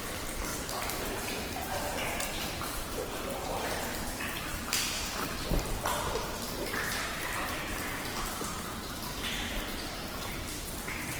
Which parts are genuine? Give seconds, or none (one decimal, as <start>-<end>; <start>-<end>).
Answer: 0.0-0.5; 4.7-11.2